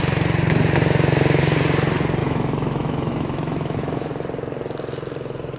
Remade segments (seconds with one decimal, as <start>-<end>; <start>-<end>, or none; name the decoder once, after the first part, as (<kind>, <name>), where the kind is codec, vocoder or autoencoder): 2.2-4.1 (autoencoder, DAC-VAE)